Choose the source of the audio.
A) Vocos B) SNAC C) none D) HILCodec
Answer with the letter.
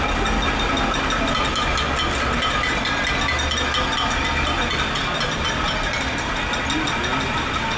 C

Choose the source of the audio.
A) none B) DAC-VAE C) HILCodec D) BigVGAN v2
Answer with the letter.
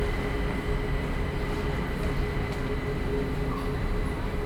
A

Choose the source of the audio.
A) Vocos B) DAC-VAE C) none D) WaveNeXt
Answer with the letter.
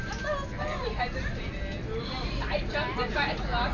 C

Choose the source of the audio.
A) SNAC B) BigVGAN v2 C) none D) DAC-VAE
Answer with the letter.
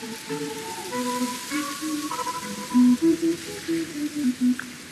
C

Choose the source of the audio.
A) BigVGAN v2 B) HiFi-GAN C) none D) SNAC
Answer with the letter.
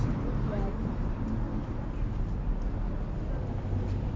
C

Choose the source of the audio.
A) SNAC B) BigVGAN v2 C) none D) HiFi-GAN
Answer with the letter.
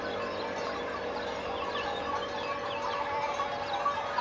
C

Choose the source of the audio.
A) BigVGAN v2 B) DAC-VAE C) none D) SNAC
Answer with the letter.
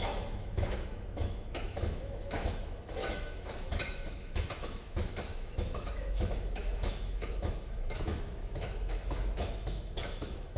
B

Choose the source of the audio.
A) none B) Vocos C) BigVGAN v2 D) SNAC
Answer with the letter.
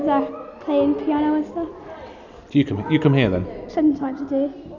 A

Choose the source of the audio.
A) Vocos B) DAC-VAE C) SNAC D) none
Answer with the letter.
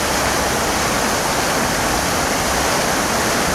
D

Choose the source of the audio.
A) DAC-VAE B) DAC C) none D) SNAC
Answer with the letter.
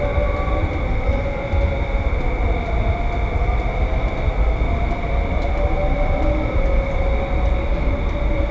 C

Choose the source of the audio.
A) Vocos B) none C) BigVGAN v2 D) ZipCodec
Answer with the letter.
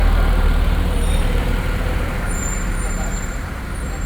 C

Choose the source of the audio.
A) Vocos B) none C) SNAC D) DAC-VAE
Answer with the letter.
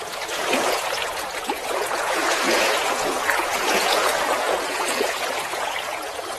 A